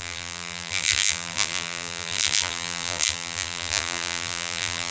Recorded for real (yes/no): no